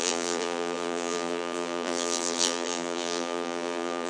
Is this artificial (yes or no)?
yes